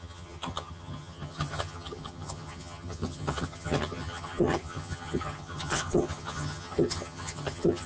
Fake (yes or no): yes